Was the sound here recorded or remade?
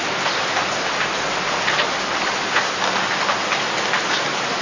recorded